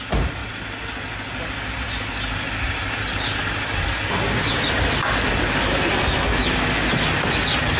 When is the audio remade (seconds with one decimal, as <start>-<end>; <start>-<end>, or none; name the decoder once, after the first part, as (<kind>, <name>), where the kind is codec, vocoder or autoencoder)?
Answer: none